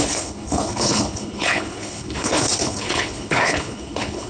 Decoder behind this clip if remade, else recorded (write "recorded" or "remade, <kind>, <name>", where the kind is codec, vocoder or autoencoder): remade, codec, HILCodec